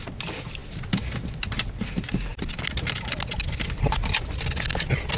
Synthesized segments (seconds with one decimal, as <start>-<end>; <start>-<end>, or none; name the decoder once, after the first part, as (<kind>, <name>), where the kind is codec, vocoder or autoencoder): none